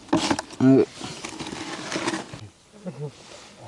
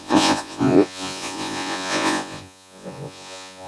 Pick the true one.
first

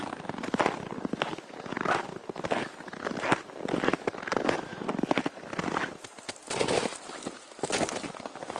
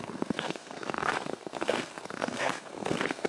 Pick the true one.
first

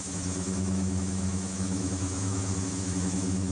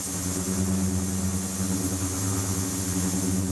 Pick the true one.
second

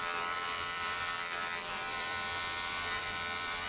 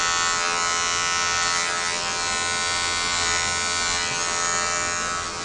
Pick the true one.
second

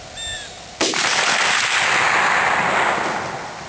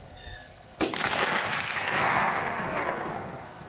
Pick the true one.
first